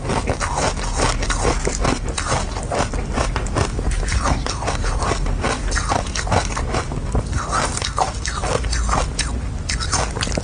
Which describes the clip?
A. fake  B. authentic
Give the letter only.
B